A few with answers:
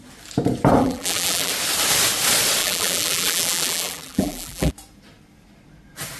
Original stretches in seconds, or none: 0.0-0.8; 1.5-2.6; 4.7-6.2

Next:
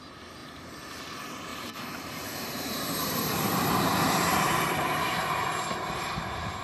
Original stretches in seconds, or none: 0.0-0.4; 1.0-1.5; 5.5-6.6

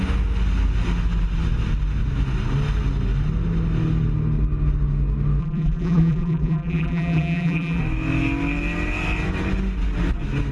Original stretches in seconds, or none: 0.0-5.4; 7.8-10.5

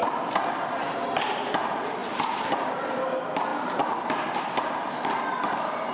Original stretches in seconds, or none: 0.0-5.9

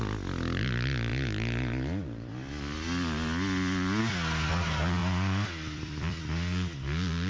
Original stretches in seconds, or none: 0.0-5.0; 6.2-7.3

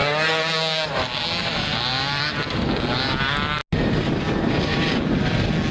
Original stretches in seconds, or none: 0.0-1.4; 2.8-5.7

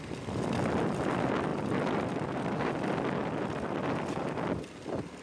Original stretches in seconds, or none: 0.0-5.2